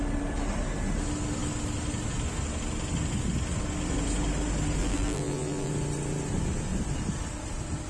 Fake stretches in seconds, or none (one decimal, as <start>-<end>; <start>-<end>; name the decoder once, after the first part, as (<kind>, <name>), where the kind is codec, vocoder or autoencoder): 4.8-5.7 (vocoder, BigVGAN v2)